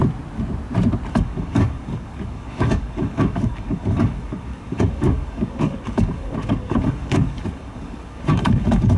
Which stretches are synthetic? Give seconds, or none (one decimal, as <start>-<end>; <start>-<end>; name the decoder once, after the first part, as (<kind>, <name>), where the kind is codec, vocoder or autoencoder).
1.1-9.0 (codec, DAC)

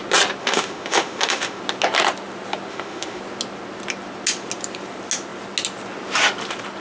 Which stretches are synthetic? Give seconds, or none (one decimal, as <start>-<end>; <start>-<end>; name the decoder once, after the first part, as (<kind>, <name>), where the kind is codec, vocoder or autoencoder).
0.4-1.6 (autoencoder, DAC-VAE); 2.7-3.2

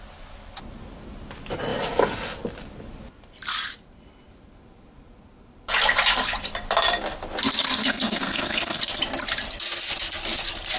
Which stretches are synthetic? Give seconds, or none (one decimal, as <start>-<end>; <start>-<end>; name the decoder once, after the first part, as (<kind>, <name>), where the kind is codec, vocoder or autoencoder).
7.7-8.8 (codec, SNAC)

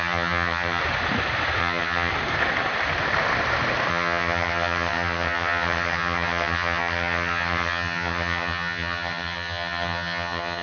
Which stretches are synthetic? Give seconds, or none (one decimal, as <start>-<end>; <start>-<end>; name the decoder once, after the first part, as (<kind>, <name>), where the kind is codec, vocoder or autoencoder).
0.0-0.8 (vocoder, HiFi-GAN); 1.6-2.1; 3.9-10.6

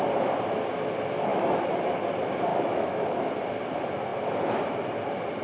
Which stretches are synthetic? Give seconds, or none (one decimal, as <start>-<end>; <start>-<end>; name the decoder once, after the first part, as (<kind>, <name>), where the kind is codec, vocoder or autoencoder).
1.3-1.9 (autoencoder, DAC-VAE); 2.5-3.3

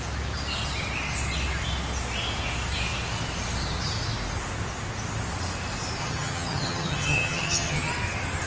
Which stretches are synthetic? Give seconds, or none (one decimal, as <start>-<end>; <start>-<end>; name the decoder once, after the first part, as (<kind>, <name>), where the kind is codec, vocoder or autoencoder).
6.0-7.9 (vocoder, HiFi-GAN)

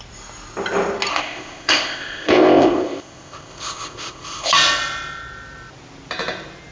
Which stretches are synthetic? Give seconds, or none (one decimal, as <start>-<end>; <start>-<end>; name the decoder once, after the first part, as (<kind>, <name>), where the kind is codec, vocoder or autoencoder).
1.1-4.5 (codec, ZipCodec)

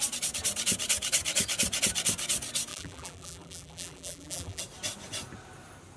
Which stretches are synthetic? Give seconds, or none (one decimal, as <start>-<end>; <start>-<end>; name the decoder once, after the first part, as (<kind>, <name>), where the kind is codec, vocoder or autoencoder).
2.7-4.6 (vocoder, BigVGAN v2)